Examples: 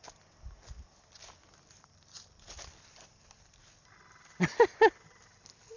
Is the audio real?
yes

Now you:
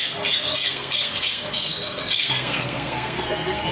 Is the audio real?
no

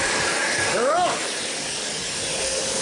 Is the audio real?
no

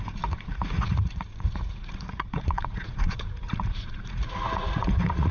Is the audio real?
no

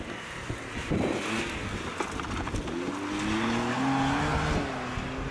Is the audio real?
yes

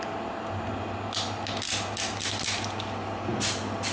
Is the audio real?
yes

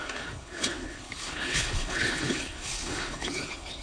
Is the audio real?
no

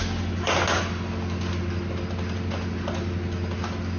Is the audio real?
yes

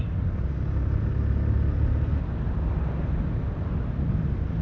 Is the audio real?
yes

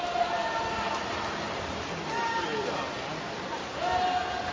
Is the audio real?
yes